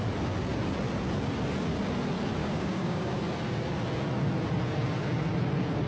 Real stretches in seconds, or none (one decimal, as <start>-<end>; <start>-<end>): 0.0-2.4; 3.2-5.9